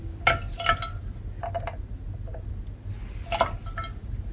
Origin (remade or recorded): recorded